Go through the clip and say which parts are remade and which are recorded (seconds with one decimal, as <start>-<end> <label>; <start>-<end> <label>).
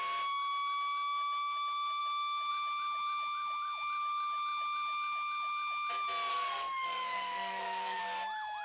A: 0.0-6.3 recorded; 6.3-8.0 remade; 8.0-8.6 recorded